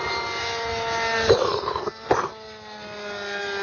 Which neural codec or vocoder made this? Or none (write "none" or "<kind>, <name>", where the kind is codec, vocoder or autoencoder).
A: none